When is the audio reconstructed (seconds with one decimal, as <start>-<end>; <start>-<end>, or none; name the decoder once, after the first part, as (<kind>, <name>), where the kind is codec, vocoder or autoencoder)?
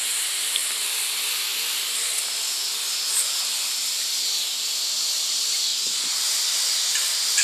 none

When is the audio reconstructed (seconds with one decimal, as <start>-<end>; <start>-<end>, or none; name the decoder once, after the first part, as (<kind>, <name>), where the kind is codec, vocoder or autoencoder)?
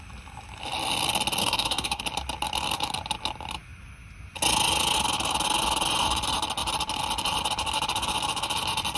1.4-2.0 (codec, DAC)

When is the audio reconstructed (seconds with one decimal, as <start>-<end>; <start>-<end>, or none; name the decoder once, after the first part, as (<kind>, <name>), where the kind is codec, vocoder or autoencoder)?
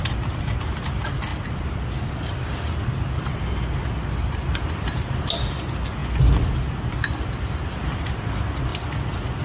none